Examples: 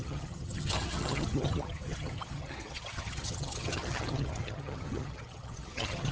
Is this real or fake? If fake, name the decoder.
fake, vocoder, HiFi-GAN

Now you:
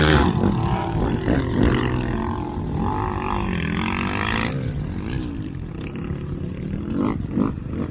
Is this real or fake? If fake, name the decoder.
real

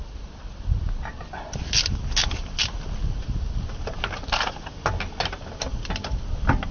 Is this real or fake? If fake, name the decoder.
real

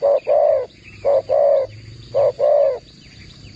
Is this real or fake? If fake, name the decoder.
real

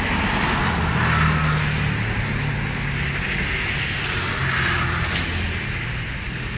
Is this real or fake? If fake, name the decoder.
real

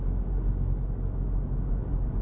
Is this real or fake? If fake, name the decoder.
real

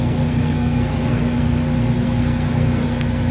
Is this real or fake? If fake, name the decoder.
fake, codec, SNAC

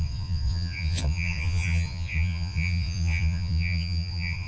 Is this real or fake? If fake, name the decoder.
fake, vocoder, Vocos